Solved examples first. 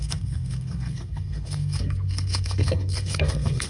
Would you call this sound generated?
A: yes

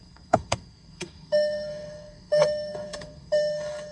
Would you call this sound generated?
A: yes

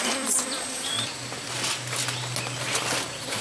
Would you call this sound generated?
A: no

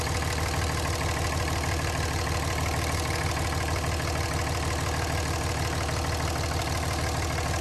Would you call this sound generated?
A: no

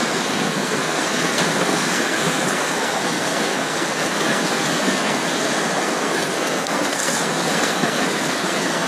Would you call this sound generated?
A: yes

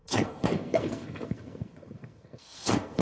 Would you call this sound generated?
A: yes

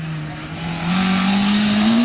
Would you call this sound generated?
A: no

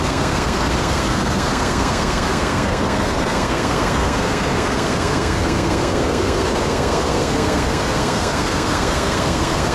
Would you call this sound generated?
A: yes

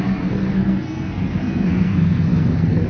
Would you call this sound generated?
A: yes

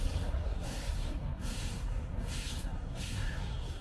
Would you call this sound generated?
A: yes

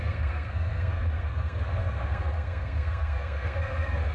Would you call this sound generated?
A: yes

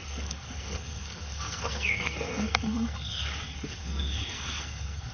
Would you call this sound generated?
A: yes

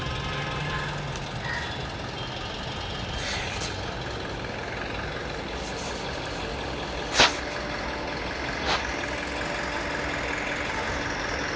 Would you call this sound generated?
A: no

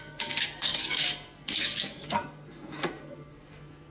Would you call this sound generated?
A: yes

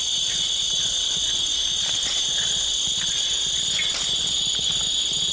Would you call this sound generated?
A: no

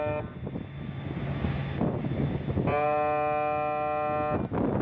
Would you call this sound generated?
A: no